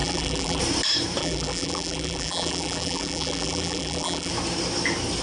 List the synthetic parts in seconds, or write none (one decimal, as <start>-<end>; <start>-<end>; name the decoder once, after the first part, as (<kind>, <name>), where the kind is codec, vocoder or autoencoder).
0.0-0.6 (vocoder, BigVGAN v2); 1.2-4.3